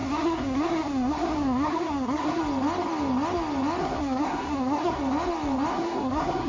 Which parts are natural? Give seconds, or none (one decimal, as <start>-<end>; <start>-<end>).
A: 2.4-3.8; 5.0-5.7